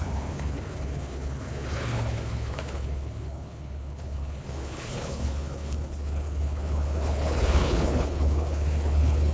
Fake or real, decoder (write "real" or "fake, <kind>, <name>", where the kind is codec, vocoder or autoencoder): fake, codec, HILCodec